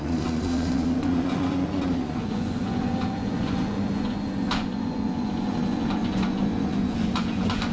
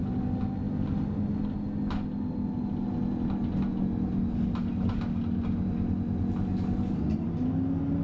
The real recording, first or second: second